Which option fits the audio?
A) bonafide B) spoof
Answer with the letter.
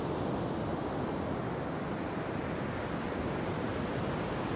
A